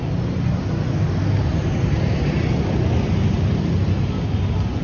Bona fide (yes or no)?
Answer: yes